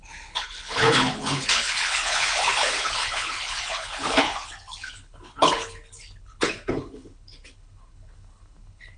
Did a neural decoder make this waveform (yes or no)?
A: yes